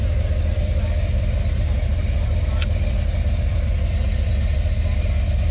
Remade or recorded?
recorded